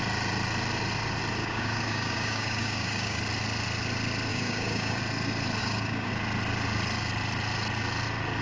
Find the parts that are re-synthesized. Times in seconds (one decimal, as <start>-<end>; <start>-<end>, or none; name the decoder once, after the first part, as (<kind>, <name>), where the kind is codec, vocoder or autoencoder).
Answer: 1.4-3.2 (codec, DAC); 4.3-5.0; 5.6-6.1